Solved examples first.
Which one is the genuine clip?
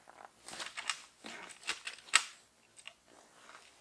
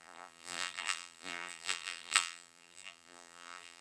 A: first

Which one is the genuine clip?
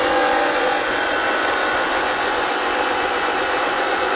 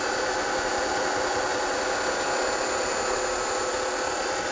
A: second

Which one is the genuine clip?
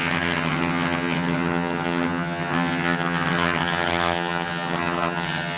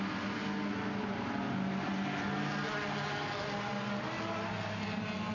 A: second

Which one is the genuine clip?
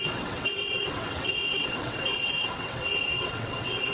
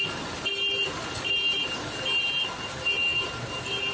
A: second